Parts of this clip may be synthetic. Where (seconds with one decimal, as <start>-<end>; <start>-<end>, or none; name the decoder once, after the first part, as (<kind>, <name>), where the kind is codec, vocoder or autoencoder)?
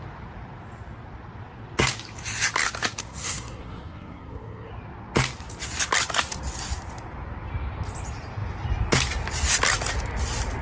3.0-4.7 (codec, SNAC)